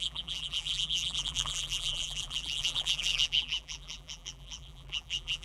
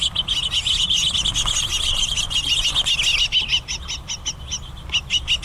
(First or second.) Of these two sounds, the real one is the second